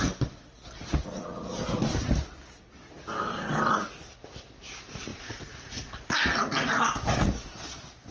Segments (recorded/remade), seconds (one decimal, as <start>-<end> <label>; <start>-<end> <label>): 0.0-5.1 recorded; 5.1-5.9 remade; 5.9-8.1 recorded